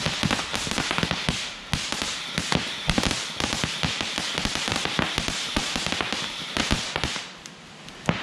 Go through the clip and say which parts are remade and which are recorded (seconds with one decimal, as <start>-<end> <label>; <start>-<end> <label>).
0.0-8.2 recorded